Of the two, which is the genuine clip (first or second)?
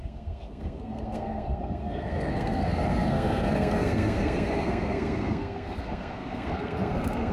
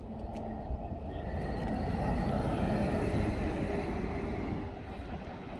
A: second